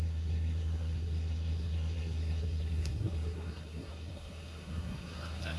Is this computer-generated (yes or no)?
yes